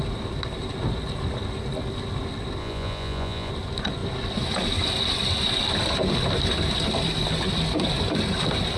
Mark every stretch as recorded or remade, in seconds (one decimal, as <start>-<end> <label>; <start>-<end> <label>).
0.0-2.6 recorded; 2.6-3.5 remade; 3.5-8.8 recorded